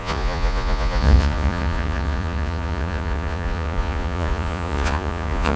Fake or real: fake